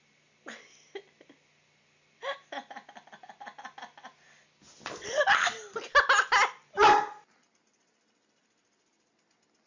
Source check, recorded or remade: recorded